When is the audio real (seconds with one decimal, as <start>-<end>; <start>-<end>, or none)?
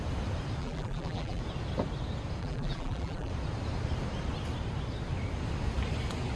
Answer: 0.0-0.6; 1.4-2.4; 3.3-6.4